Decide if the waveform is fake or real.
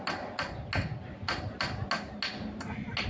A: real